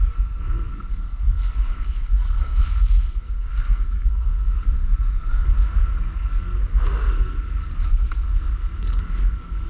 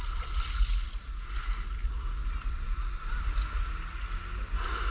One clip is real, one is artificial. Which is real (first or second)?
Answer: second